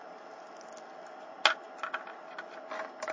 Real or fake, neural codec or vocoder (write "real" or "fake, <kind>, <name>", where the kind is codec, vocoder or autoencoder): real